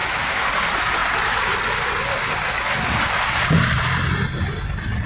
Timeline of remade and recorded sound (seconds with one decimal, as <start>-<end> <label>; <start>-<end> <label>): 0.0-0.5 remade; 0.5-5.1 recorded